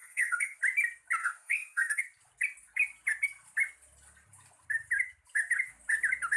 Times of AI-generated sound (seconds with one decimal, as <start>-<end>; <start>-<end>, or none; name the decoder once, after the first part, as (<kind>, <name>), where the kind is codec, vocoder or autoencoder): 0.0-0.6 (codec, SNAC); 1.2-2.0